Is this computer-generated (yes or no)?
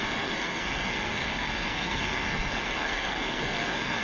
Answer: yes